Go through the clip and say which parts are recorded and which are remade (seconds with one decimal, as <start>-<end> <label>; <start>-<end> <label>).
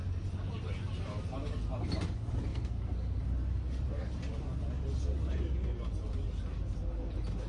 0.0-2.5 recorded; 2.5-3.2 remade; 3.2-7.5 recorded